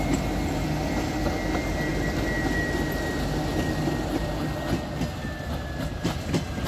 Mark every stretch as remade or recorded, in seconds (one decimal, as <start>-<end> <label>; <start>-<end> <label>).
0.0-6.7 recorded